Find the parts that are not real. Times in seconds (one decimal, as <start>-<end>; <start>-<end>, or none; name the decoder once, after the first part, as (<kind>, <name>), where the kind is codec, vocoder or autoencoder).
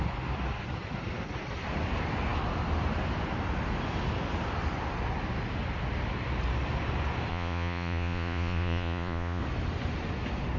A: 7.3-9.4 (vocoder, Vocos)